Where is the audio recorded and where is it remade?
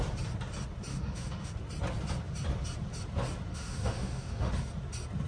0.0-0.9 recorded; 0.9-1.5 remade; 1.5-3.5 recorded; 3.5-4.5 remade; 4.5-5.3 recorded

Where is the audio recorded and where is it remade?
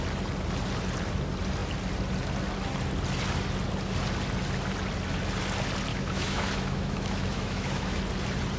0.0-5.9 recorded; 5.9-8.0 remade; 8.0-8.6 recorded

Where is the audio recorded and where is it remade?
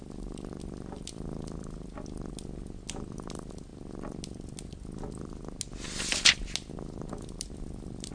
0.0-8.1 recorded